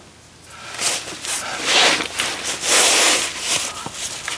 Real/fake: real